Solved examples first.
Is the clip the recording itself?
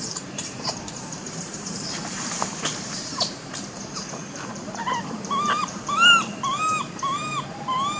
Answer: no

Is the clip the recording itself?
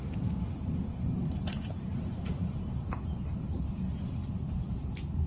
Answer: no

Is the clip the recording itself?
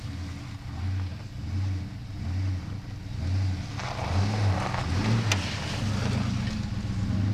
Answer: yes